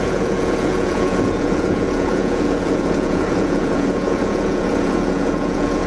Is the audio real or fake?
fake